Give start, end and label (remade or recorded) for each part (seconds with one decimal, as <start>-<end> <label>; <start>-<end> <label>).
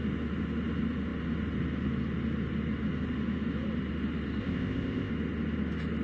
0.0-4.4 recorded; 4.4-5.1 remade; 5.1-6.0 recorded